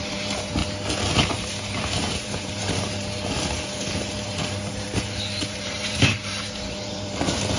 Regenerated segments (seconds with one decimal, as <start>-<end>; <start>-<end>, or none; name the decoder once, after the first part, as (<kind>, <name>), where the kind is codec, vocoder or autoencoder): 0.0-0.6 (vocoder, BigVGAN v2); 1.3-7.6